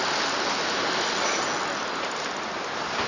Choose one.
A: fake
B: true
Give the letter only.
B